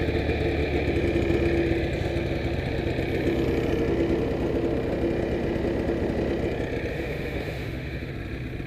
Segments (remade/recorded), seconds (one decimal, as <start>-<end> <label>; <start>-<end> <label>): 0.0-6.9 recorded; 6.9-8.1 remade; 8.1-8.7 recorded

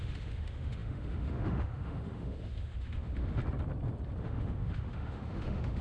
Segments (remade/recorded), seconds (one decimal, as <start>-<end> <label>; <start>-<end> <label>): 0.0-3.4 remade; 3.4-4.2 recorded; 4.2-5.8 remade

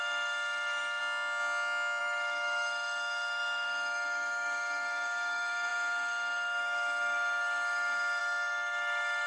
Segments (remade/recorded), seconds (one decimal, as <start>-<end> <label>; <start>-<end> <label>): 0.0-1.0 remade; 1.0-2.0 recorded; 2.0-9.3 remade